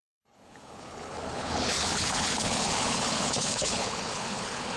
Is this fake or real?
fake